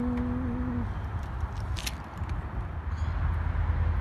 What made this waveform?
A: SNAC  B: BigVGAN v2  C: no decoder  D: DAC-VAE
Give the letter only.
C